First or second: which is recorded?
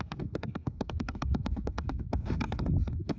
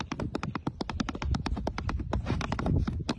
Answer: second